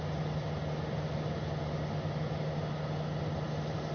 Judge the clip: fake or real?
real